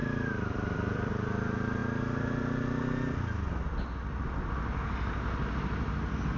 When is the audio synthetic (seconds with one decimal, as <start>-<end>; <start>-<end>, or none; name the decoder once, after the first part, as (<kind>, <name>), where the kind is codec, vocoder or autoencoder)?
0.0-1.1 (vocoder, BigVGAN v2)

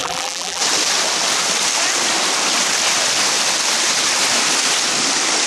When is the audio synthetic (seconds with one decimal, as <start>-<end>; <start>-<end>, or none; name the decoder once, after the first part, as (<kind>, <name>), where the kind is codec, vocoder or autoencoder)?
0.0-0.6 (vocoder, BigVGAN v2)

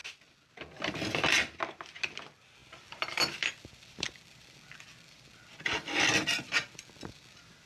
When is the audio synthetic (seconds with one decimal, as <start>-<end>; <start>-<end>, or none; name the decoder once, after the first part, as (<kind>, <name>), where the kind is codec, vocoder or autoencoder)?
2.6-6.9 (vocoder, BigVGAN v2)